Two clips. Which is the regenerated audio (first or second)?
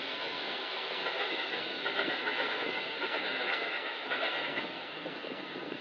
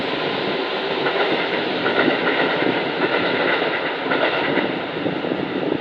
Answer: first